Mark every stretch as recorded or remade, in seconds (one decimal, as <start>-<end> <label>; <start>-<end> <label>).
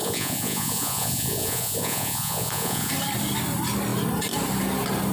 0.0-2.9 remade; 2.9-5.1 recorded